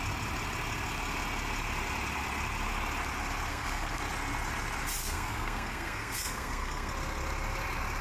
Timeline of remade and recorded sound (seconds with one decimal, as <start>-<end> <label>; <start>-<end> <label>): 0.0-3.5 recorded; 3.5-4.0 remade; 4.0-5.0 recorded; 5.0-6.9 remade; 6.9-8.0 recorded